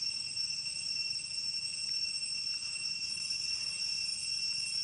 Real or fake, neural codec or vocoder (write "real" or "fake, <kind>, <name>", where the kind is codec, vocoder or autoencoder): real